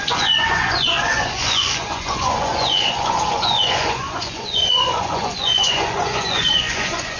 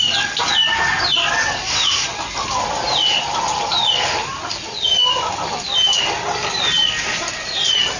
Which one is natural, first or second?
second